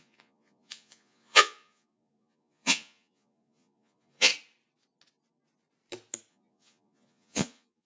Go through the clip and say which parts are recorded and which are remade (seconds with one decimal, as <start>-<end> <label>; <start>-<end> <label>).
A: 0.0-4.3 remade; 4.3-6.3 recorded; 6.3-7.9 remade